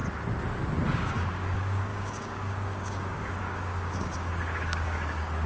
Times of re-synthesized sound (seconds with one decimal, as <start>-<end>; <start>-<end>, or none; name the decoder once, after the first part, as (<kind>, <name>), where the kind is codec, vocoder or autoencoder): 0.9-5.5 (codec, DAC)